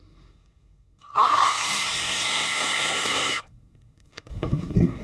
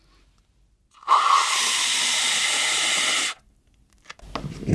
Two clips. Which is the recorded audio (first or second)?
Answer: second